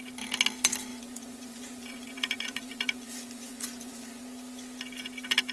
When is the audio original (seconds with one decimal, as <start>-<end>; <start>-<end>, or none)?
0.0-0.9; 4.2-5.5